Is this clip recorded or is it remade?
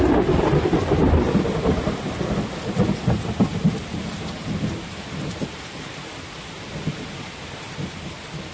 recorded